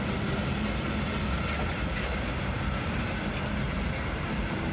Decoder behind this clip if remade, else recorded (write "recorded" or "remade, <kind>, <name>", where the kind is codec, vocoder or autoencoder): recorded